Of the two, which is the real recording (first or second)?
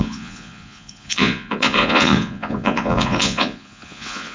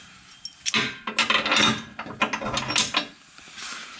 second